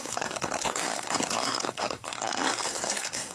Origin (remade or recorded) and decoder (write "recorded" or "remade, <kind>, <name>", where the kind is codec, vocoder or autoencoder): remade, codec, SNAC